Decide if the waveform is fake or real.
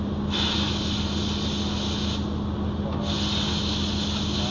real